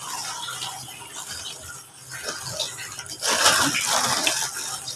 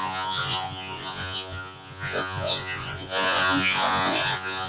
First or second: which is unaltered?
first